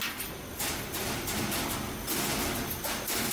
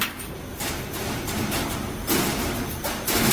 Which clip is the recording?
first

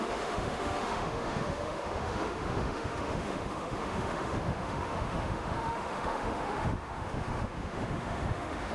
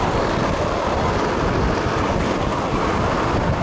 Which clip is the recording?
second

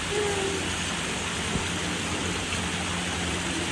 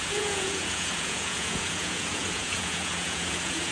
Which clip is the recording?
first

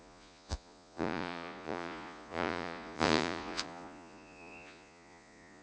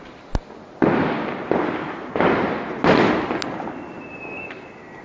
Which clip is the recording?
second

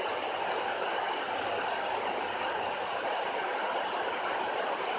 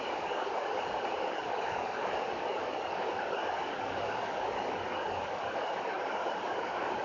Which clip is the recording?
first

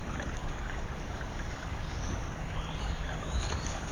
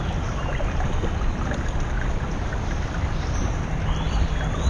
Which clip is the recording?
second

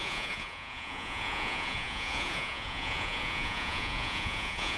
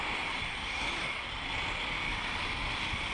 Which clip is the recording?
second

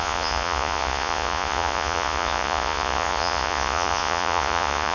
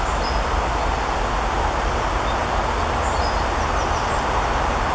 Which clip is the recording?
second